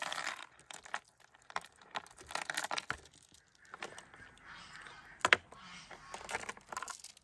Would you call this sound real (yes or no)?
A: yes